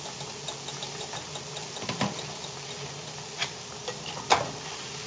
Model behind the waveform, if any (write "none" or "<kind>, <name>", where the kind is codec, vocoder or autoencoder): none